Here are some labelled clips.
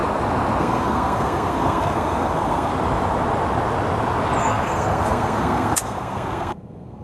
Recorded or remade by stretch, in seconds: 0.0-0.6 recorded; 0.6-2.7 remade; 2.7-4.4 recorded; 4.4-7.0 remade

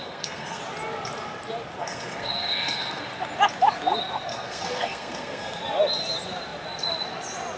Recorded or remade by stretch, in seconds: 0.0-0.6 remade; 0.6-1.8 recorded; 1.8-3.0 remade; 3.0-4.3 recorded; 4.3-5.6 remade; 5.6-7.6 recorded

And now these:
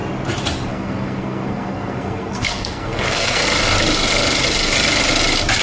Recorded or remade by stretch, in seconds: 0.0-0.7 recorded; 0.7-3.4 remade; 3.4-5.6 recorded

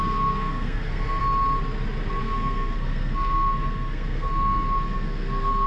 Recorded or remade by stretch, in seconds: 0.0-1.2 remade; 1.2-2.2 recorded; 2.2-5.7 remade